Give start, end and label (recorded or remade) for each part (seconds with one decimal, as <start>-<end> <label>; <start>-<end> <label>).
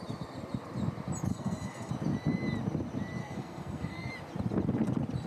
0.0-1.3 recorded; 1.3-1.9 remade; 1.9-3.2 recorded; 3.2-4.1 remade; 4.1-5.3 recorded